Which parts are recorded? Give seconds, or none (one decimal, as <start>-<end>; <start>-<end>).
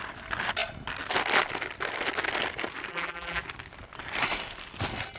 0.0-2.9; 3.4-5.2